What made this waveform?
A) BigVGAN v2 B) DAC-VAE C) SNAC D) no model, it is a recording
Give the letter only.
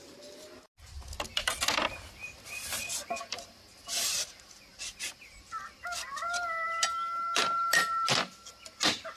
D